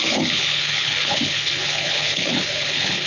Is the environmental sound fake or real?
fake